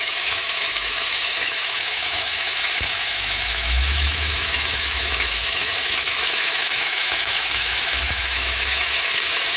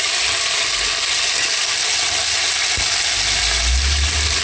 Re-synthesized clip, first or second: first